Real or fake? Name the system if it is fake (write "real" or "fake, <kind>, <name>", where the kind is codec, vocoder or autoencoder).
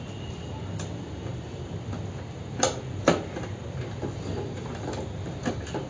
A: real